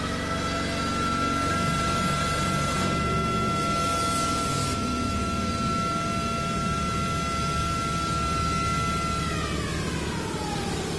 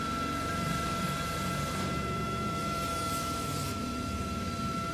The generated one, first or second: second